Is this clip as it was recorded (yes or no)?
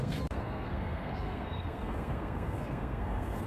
no